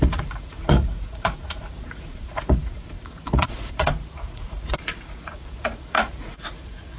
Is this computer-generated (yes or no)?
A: yes